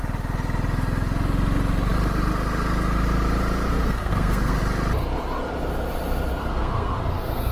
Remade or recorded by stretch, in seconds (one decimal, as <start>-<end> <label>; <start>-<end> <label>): 0.0-3.7 recorded; 3.7-4.6 remade; 4.6-6.4 recorded; 6.4-7.5 remade